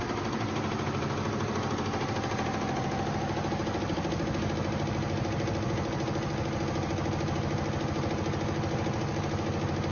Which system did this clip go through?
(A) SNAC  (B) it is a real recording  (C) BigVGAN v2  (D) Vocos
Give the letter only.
B